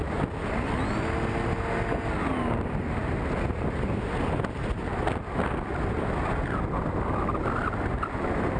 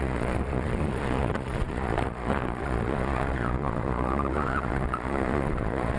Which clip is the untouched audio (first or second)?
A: first